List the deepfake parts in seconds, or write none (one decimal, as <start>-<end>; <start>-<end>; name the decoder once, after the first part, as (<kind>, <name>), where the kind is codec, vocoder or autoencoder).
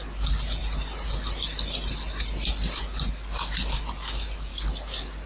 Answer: none